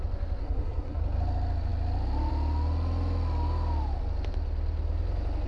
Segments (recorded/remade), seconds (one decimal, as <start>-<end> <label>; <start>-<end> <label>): 0.0-0.4 recorded; 0.4-1.0 remade; 1.0-5.5 recorded